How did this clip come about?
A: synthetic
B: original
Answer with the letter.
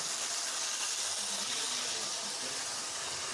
B